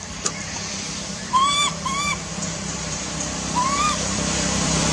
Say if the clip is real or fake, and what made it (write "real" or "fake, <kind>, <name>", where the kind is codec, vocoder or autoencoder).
fake, vocoder, BigVGAN v2